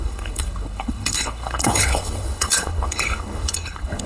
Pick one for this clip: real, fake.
fake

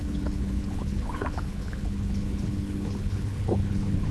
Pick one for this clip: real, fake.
fake